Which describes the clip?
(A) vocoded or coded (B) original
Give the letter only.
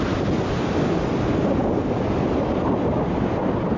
B